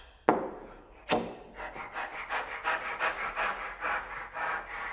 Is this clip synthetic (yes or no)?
no